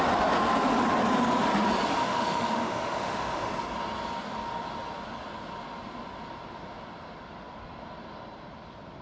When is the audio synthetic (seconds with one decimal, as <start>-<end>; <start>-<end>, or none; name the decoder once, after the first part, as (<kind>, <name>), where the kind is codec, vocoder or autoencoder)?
2.0-3.5 (autoencoder, DAC-VAE)